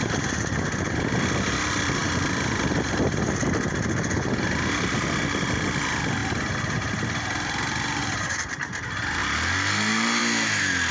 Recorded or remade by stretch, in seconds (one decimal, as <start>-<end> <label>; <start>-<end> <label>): 0.0-10.9 recorded